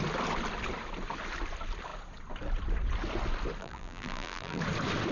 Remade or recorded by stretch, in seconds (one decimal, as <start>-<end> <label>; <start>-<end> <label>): 0.0-3.6 recorded; 3.6-4.6 remade; 4.6-5.1 recorded